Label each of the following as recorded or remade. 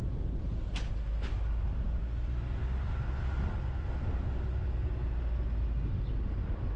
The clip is recorded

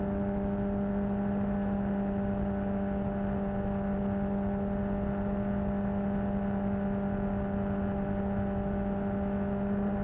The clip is recorded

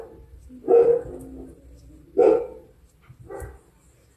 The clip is recorded